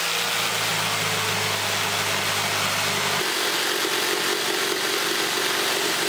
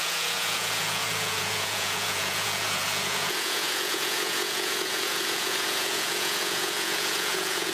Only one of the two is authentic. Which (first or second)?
first